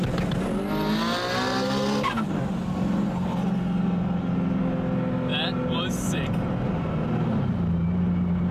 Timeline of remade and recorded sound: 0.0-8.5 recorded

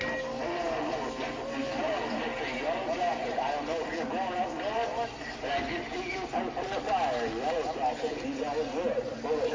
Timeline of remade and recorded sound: 0.0-1.6 recorded; 1.6-2.2 remade; 2.2-3.1 recorded; 3.1-5.4 remade; 5.4-9.5 recorded

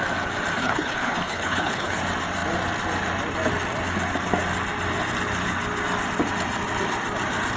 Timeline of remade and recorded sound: 0.0-0.6 recorded; 0.6-2.0 remade; 2.0-7.6 recorded

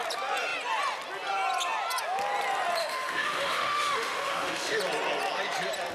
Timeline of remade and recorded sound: 0.0-2.8 recorded; 2.8-4.8 remade; 4.8-5.9 recorded

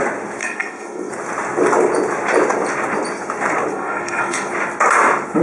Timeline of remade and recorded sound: 0.0-0.4 recorded; 0.4-1.1 remade; 1.1-3.7 recorded; 3.7-4.5 remade; 4.5-5.4 recorded

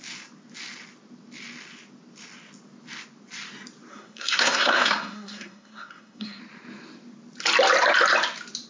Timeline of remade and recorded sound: 0.0-3.9 recorded; 3.9-6.4 remade; 6.4-8.7 recorded

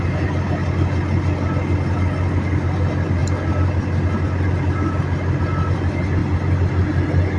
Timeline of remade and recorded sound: 0.0-7.4 recorded